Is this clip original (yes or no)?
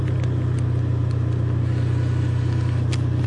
yes